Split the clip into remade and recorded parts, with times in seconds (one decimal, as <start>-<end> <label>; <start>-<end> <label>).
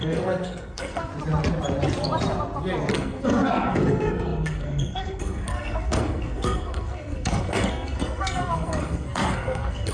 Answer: 0.0-1.1 remade; 1.1-2.9 recorded; 2.9-9.9 remade